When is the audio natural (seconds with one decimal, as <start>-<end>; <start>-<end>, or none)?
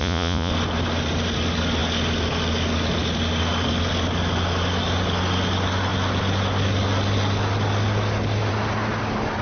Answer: 0.5-9.4